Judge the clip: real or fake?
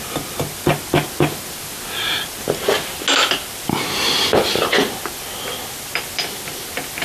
real